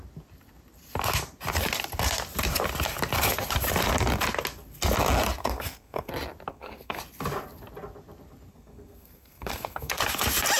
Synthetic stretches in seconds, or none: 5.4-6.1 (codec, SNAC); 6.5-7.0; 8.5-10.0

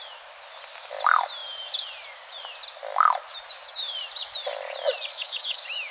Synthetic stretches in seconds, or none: 5.1-5.9 (autoencoder, DAC-VAE)